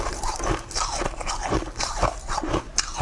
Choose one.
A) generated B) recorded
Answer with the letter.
A